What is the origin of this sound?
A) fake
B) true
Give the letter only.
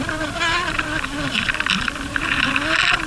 B